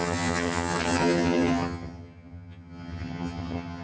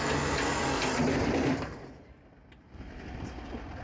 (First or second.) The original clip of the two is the second